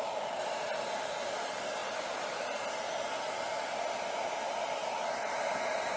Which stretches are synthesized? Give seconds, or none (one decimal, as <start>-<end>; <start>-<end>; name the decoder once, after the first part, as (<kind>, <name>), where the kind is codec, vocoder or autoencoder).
1.8-3.3 (vocoder, BigVGAN v2)